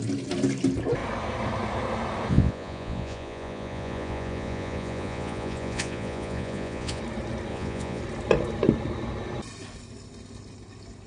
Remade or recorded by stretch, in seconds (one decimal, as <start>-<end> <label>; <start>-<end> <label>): 0.0-2.3 recorded; 2.3-7.0 remade; 7.0-7.5 recorded; 7.5-8.0 remade; 8.0-11.1 recorded